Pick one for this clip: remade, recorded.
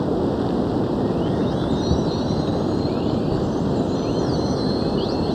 recorded